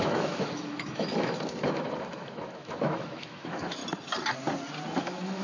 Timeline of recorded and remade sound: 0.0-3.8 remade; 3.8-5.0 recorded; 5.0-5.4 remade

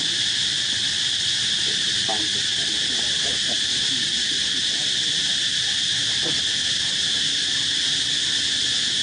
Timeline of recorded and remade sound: 0.0-9.0 recorded

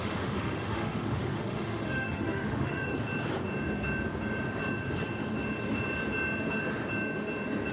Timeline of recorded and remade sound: 0.0-2.9 remade; 2.9-7.7 recorded

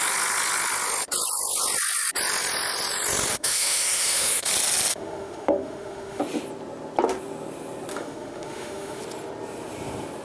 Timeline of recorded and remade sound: 0.0-3.3 recorded; 3.3-4.5 remade; 4.5-4.9 recorded; 4.9-6.2 remade; 6.2-7.9 recorded; 7.9-9.0 remade; 9.0-10.2 recorded

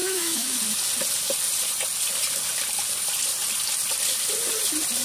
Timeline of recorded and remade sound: 0.0-0.6 remade; 0.6-5.0 recorded

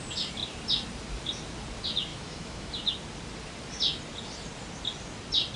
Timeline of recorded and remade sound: 0.0-2.1 recorded; 2.1-2.7 remade; 2.7-5.6 recorded